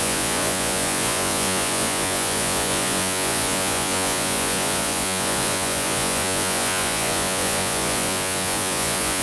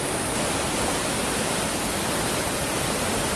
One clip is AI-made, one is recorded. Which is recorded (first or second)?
second